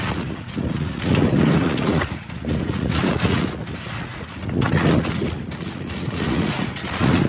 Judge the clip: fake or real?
fake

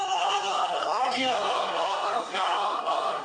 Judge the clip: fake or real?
fake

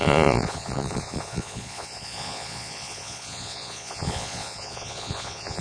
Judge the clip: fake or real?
fake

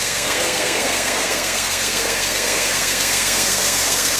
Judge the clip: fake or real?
fake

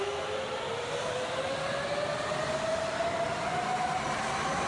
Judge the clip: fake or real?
real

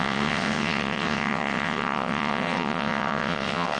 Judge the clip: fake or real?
fake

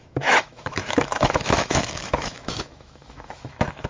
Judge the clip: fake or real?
fake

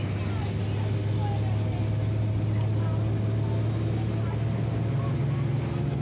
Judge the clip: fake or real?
real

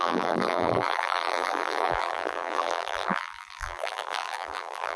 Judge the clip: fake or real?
fake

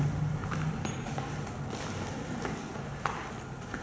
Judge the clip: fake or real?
real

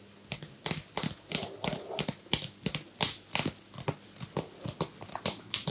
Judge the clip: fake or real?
real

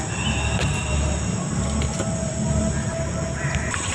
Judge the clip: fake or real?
real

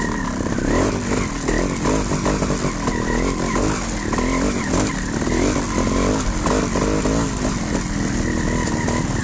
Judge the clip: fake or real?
real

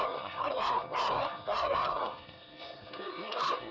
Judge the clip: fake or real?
fake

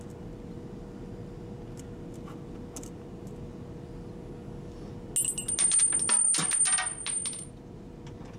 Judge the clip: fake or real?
real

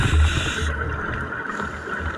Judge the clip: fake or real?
real